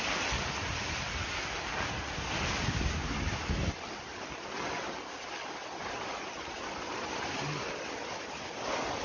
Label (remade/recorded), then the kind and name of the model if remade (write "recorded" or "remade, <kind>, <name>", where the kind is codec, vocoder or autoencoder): recorded